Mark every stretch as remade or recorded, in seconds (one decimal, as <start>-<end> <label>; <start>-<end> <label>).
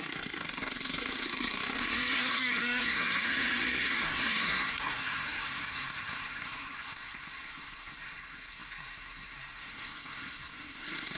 0.0-11.2 remade